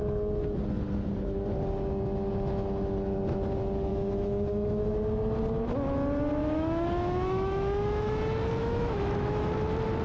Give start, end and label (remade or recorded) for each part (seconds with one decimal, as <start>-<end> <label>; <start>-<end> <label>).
0.0-3.9 recorded; 3.9-5.0 remade; 5.0-6.4 recorded; 6.4-8.2 remade; 8.2-8.6 recorded; 8.6-9.5 remade; 9.5-10.0 recorded